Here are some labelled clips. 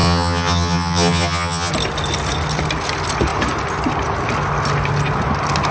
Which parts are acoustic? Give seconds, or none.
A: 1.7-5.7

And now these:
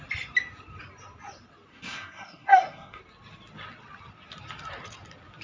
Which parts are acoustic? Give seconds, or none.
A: 0.0-1.7; 3.0-5.4

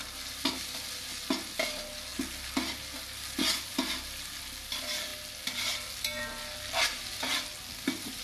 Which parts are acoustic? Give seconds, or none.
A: 0.0-8.2

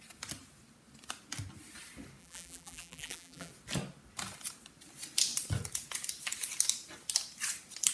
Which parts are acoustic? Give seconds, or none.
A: 0.0-2.2; 3.5-7.9

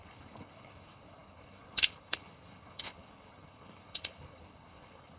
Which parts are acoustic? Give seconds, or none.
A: none

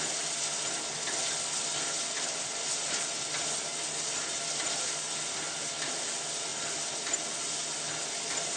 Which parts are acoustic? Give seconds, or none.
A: 0.0-8.6

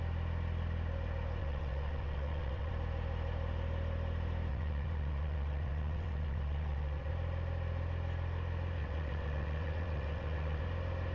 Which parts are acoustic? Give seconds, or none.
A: 0.0-1.4; 2.7-4.5; 7.1-8.8; 10.6-11.1

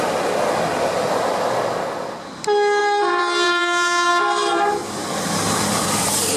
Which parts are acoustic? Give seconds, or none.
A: 0.0-2.8; 4.2-4.8; 5.3-6.4